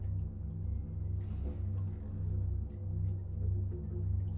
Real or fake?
real